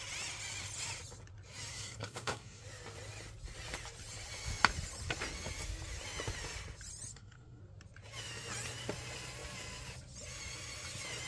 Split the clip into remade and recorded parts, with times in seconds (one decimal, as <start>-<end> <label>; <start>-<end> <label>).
0.0-1.7 recorded; 1.7-2.6 remade; 2.6-7.1 recorded; 7.1-7.6 remade; 7.6-11.3 recorded